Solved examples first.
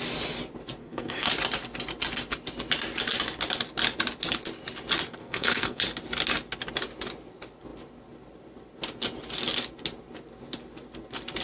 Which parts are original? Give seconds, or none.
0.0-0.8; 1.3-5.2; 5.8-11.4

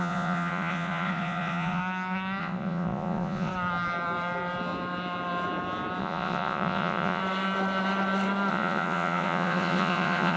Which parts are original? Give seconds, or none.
1.8-2.4; 3.5-6.0; 7.2-8.5

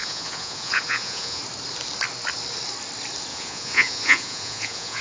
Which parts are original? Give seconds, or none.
1.4-3.3